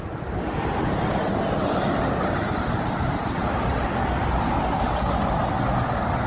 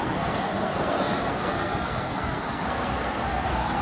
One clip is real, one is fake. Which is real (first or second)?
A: first